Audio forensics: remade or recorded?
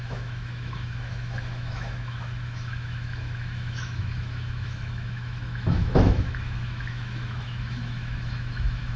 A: remade